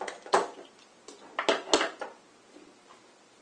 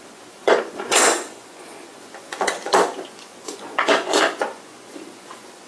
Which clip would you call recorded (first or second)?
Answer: first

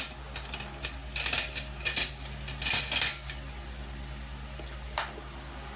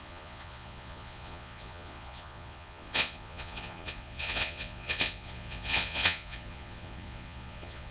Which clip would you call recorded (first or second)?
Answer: first